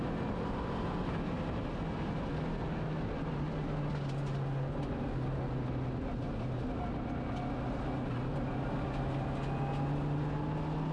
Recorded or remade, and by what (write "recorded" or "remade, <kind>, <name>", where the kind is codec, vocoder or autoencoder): recorded